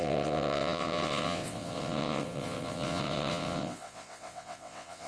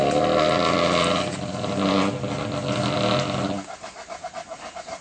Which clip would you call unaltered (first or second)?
second